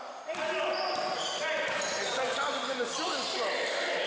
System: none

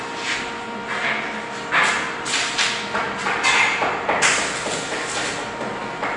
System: none